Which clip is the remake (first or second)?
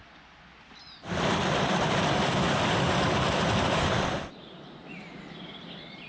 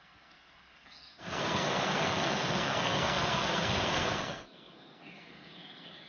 second